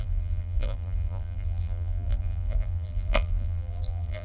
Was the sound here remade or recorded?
remade